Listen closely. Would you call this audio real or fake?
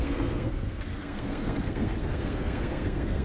fake